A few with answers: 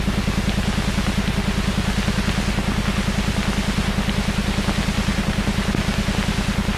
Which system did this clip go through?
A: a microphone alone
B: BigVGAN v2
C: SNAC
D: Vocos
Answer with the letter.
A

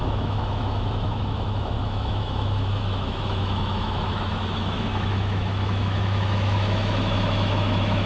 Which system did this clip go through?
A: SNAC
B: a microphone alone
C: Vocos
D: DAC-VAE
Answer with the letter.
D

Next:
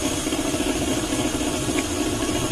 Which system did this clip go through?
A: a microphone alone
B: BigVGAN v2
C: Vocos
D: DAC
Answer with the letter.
B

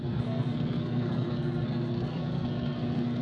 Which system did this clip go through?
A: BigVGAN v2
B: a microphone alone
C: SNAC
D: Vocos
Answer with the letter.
C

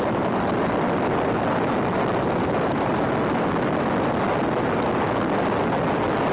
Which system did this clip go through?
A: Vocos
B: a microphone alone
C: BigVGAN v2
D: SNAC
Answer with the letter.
B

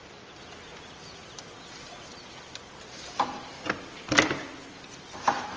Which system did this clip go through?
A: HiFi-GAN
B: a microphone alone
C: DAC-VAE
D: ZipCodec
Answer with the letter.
B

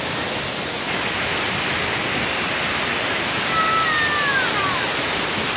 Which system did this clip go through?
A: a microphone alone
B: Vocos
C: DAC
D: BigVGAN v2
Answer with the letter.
A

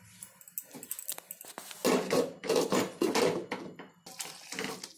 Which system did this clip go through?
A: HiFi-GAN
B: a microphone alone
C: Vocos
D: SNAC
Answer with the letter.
B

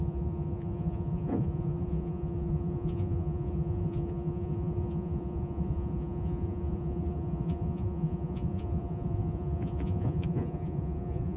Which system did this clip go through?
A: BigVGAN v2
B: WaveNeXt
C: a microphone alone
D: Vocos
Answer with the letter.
D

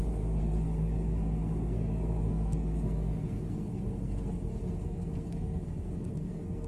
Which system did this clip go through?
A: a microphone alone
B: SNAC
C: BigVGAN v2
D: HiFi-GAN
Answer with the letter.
B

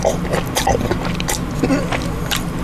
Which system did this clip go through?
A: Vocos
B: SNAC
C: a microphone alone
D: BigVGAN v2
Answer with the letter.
C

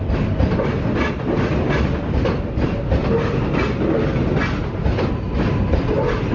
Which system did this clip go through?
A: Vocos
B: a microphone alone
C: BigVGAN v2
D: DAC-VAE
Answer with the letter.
B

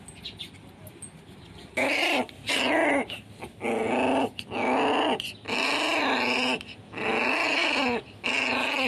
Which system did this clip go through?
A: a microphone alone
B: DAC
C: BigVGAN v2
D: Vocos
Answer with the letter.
A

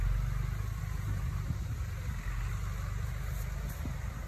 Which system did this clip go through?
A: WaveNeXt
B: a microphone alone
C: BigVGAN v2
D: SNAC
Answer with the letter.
B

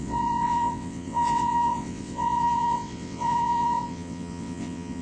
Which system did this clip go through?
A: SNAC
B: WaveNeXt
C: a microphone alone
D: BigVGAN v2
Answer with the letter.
B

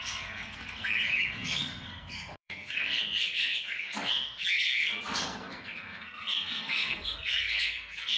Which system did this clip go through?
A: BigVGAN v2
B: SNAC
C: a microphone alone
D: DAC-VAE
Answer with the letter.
B